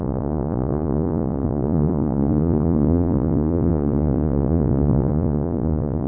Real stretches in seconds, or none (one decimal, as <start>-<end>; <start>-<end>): none